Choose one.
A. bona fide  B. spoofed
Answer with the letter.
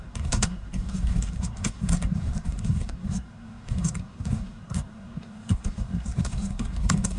B